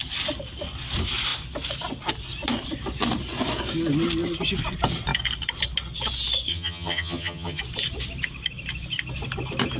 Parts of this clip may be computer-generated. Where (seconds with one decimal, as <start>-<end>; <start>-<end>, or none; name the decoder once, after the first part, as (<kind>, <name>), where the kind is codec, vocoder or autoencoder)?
6.5-7.6 (vocoder, HiFi-GAN)